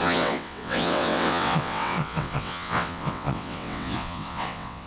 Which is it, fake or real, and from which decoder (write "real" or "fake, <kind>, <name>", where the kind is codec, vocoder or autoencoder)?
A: fake, vocoder, WaveNeXt